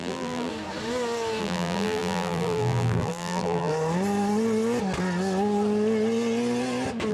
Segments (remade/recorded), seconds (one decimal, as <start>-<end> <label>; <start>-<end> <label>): 0.0-0.5 remade; 0.5-1.4 recorded; 1.4-3.7 remade; 3.7-7.1 recorded